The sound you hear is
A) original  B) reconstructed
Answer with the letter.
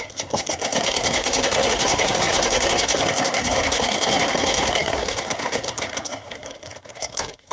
B